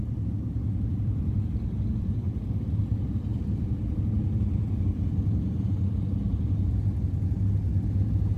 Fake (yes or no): yes